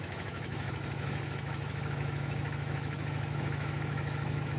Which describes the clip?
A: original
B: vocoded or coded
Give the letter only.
B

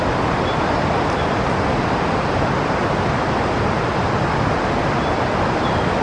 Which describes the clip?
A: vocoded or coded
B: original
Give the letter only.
B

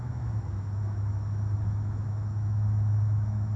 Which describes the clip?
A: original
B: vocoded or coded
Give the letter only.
B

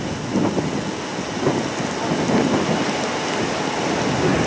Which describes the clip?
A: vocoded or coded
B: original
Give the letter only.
B